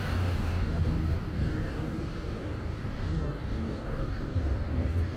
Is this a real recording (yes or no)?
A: no